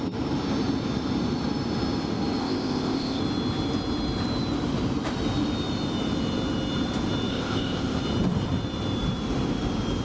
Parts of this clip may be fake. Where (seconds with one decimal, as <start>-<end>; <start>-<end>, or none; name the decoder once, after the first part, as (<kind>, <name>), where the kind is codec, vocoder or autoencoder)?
2.4-3.2 (codec, ZipCodec); 7.3-8.0